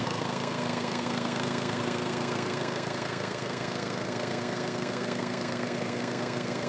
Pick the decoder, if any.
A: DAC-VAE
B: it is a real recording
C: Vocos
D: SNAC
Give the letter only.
D